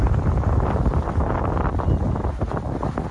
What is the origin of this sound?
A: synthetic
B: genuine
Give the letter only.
B